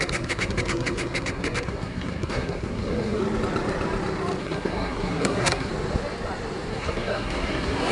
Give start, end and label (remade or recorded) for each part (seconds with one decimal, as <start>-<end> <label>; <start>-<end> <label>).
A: 0.0-3.2 remade; 3.2-4.4 recorded; 4.4-5.7 remade; 5.7-6.7 recorded; 6.7-7.9 remade